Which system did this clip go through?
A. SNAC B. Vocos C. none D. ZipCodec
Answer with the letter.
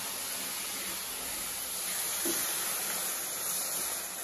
C